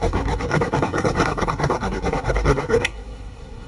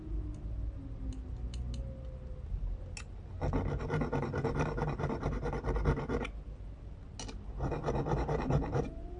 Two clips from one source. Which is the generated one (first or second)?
first